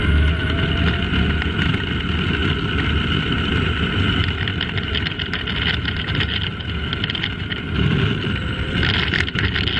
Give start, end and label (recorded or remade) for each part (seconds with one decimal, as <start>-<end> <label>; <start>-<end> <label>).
0.0-2.4 recorded; 2.4-5.5 remade; 5.5-6.5 recorded; 6.5-8.7 remade; 8.7-9.8 recorded

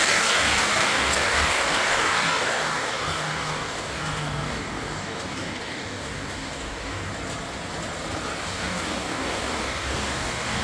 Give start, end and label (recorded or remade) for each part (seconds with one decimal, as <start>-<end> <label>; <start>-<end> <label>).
0.0-7.1 remade; 7.1-8.4 recorded; 8.4-10.6 remade